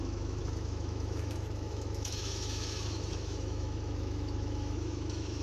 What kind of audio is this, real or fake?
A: fake